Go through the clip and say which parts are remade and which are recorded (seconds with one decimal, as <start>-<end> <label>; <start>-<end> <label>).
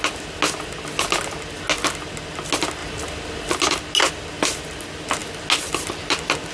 0.0-6.5 recorded